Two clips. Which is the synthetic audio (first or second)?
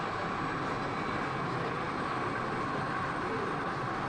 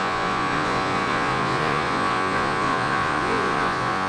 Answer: second